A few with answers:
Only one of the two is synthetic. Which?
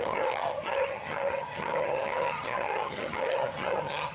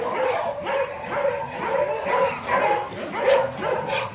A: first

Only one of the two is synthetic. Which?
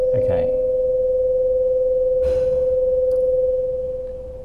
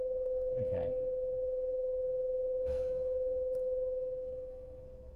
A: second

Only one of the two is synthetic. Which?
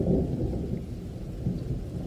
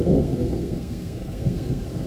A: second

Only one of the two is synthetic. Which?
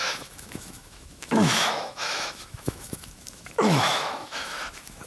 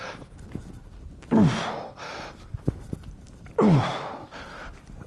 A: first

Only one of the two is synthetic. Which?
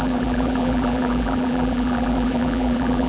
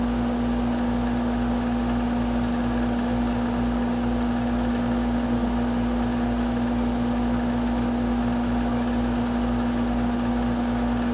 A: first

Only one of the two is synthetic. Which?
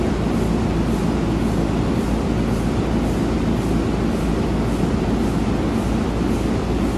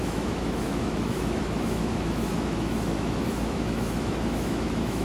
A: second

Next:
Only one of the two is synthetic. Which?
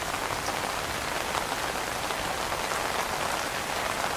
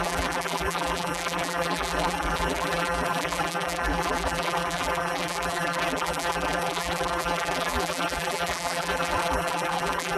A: second